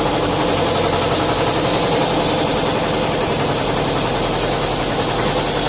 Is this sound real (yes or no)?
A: yes